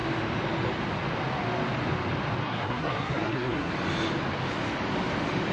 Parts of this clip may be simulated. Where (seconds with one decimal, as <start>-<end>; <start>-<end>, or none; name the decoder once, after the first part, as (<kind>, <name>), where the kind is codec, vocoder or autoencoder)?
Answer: 2.4-3.7 (codec, SNAC)